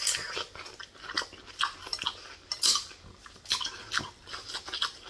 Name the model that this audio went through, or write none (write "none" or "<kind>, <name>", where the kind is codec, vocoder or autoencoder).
none